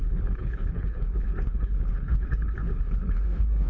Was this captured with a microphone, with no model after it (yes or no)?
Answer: no